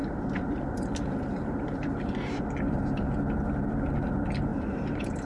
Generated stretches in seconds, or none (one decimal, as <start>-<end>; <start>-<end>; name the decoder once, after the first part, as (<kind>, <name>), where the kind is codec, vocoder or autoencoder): 0.0-2.4 (vocoder, BigVGAN v2); 4.5-5.3